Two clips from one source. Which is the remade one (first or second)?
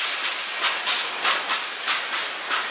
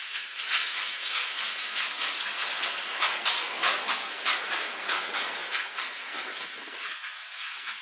second